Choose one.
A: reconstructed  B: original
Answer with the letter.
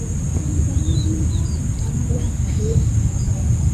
B